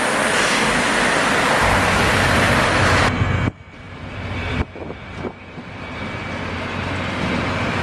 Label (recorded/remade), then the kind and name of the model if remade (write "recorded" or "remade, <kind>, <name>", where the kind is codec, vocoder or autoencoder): recorded